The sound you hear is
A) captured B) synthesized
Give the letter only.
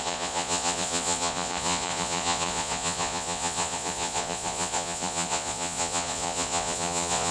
B